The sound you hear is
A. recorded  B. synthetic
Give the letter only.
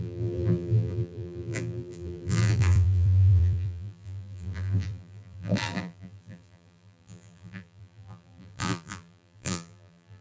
B